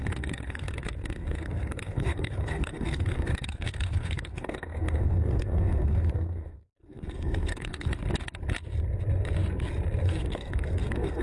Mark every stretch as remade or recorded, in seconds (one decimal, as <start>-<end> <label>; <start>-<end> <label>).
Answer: 0.0-7.9 remade; 7.9-10.0 recorded; 10.0-11.2 remade

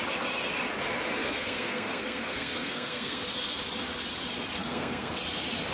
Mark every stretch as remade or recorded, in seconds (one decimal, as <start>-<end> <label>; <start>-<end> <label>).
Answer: 0.0-1.2 recorded; 1.2-3.2 remade; 3.2-4.6 recorded; 4.6-5.1 remade; 5.1-5.7 recorded

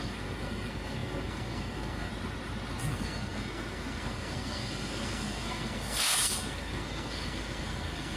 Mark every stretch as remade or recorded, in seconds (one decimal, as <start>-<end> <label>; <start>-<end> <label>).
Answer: 0.0-2.1 remade; 2.1-2.8 recorded; 2.8-8.2 remade

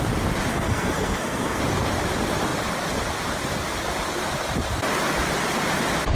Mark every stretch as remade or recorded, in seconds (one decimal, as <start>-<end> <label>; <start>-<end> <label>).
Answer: 0.0-0.5 recorded; 0.5-1.6 remade; 1.6-6.1 recorded

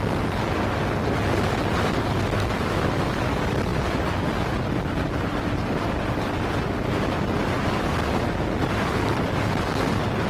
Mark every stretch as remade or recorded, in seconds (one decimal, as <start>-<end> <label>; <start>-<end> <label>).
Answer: 0.0-10.3 recorded

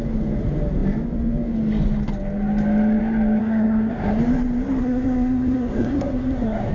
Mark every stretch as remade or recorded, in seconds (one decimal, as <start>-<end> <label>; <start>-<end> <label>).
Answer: 0.0-3.4 recorded; 3.4-4.2 remade; 4.2-4.8 recorded; 4.8-6.7 remade

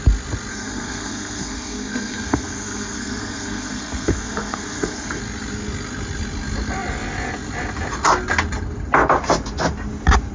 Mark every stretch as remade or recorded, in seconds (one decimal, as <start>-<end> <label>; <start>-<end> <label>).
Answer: 0.0-0.5 recorded; 0.5-5.2 remade; 5.2-10.3 recorded

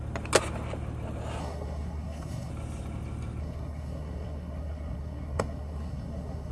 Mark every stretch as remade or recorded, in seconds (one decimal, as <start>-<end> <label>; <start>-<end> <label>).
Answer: 0.0-1.4 recorded; 1.4-2.5 remade; 2.5-3.4 recorded; 3.4-6.5 remade